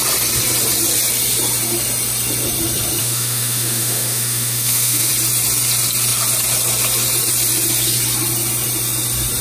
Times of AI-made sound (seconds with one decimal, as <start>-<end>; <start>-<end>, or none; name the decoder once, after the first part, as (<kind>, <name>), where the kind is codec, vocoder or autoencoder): 3.0-5.1 (autoencoder, DAC-VAE)